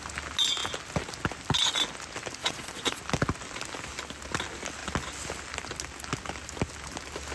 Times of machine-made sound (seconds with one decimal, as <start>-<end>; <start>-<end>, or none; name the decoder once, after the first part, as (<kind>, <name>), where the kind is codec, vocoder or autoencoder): 2.4-3.0 (vocoder, Vocos)